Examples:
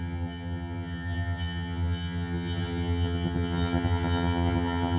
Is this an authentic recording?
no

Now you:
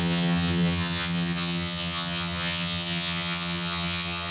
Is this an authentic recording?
no